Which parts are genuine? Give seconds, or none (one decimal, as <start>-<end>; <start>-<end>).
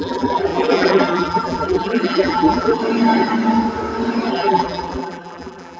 2.8-4.3